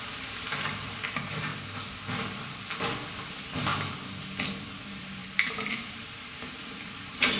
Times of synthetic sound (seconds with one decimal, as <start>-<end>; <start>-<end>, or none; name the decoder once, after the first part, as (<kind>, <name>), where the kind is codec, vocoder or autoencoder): 0.0-1.5 (vocoder, BigVGAN v2); 3.3-3.7; 4.8-7.4